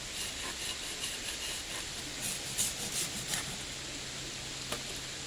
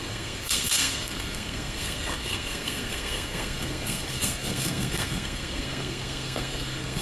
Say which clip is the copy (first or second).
second